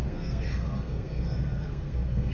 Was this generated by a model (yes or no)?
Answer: yes